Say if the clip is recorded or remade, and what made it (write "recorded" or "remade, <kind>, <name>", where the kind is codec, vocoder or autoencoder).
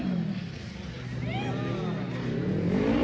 recorded